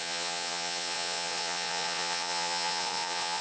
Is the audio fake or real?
fake